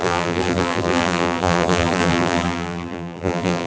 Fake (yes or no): yes